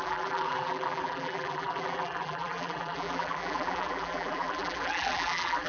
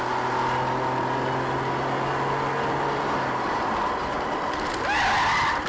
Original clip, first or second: second